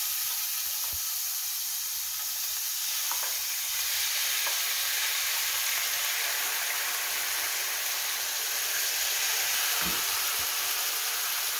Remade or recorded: remade